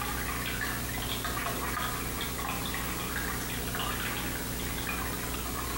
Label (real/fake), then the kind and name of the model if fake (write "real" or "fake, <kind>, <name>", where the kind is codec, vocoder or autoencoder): real